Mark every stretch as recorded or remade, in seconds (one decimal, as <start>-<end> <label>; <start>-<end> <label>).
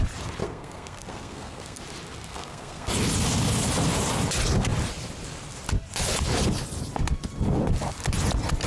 0.0-0.4 recorded; 0.4-1.8 remade; 1.8-2.3 recorded; 2.3-2.9 remade; 2.9-8.7 recorded